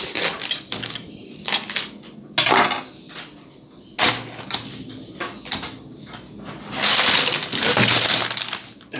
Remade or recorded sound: recorded